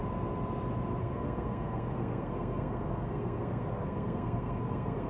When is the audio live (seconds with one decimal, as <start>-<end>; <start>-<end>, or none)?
0.0-1.0